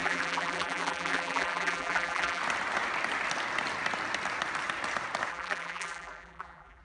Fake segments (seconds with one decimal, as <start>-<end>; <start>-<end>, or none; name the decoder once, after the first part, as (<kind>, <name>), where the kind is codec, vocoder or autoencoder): 0.0-2.4 (vocoder, BigVGAN v2); 5.3-6.8